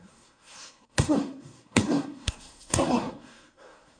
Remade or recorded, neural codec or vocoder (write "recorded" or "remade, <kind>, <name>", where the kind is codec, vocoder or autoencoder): remade, codec, SNAC